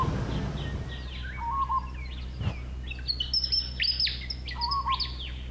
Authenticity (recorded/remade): recorded